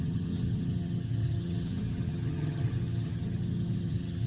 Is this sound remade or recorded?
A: remade